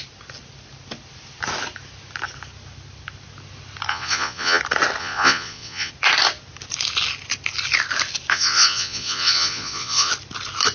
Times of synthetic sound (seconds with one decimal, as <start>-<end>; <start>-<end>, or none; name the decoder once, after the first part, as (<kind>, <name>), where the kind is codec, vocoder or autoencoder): 3.9-4.6 (vocoder, Vocos); 5.0-5.9; 8.3-10.1